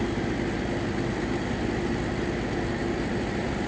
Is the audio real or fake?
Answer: real